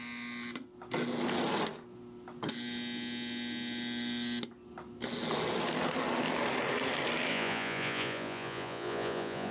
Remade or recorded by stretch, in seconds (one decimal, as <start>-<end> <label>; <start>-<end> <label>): 0.0-7.3 recorded; 7.3-9.5 remade